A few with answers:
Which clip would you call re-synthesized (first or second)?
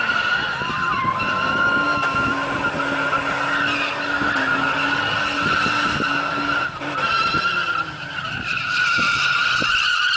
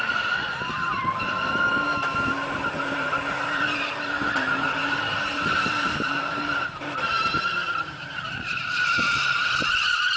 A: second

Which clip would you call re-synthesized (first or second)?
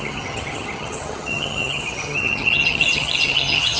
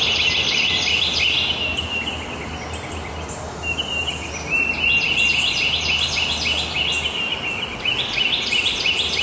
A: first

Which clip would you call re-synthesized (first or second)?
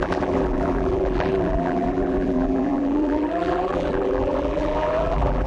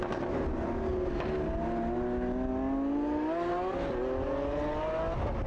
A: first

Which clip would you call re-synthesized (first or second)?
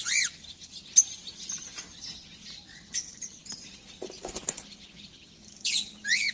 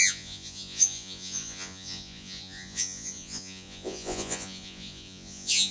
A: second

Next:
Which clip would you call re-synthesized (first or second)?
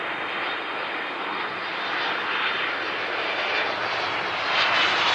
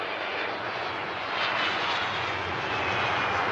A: second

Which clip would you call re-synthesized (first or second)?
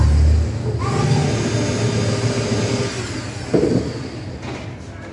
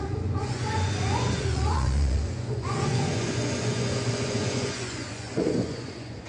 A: second